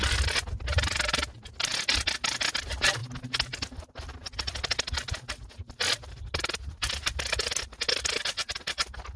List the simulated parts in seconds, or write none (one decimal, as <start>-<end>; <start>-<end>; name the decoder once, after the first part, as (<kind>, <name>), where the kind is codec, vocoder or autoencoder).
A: none